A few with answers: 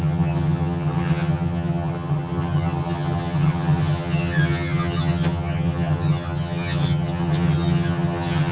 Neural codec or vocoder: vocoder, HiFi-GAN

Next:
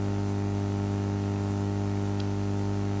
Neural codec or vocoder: none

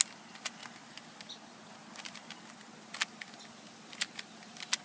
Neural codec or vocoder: none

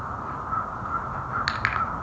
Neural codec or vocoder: none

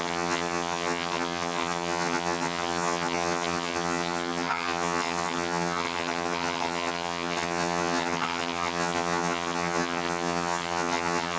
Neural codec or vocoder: vocoder, HiFi-GAN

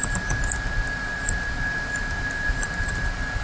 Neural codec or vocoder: none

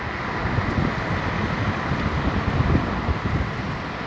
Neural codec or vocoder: none